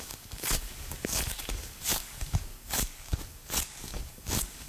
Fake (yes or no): yes